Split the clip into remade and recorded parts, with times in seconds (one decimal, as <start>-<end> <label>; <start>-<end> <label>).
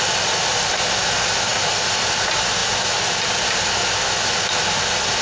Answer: 0.0-5.2 recorded